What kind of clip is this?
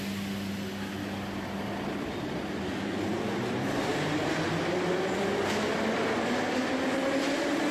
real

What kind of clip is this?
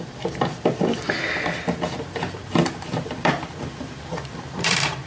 fake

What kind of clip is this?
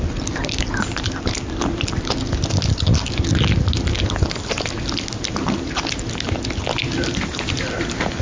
real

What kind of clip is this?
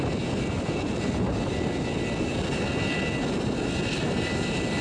real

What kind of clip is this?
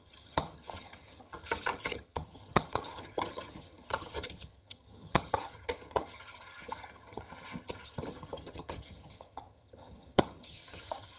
fake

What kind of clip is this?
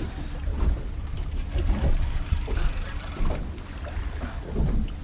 fake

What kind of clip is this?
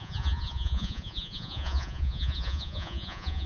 fake